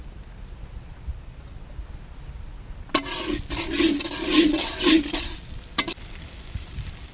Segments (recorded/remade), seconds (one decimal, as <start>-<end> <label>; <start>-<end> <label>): 0.0-4.3 recorded; 4.3-7.1 remade